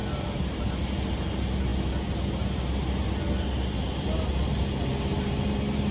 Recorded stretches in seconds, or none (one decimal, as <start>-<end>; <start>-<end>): 0.0-5.9